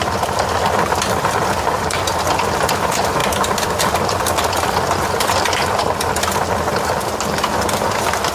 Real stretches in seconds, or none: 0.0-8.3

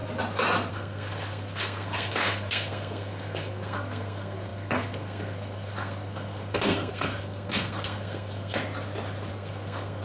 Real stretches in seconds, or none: 0.0-0.7; 8.6-9.3

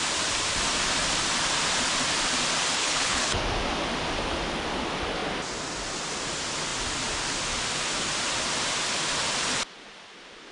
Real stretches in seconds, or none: 0.0-2.8; 3.4-10.5

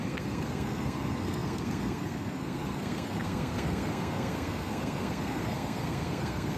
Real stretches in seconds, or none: none

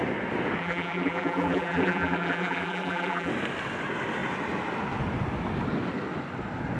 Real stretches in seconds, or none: 0.0-0.6; 3.3-6.8

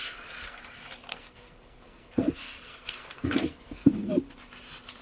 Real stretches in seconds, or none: 0.6-1.1; 4.1-5.0

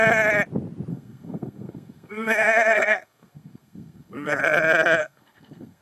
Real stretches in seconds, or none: 0.0-0.9; 4.4-5.0